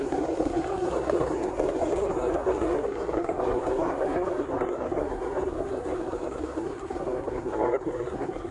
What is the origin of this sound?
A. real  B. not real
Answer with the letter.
B